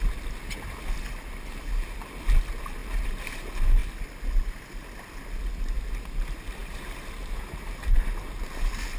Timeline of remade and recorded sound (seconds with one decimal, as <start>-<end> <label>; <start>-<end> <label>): 0.0-2.8 recorded; 2.8-3.3 remade; 3.3-6.6 recorded; 6.6-8.1 remade; 8.1-9.0 recorded